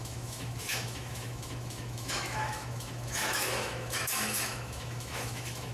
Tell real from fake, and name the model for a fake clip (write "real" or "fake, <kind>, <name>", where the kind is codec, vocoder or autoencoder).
fake, autoencoder, DAC-VAE